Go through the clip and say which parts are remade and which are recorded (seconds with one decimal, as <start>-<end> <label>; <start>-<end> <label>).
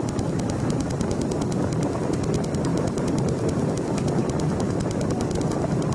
0.0-5.9 recorded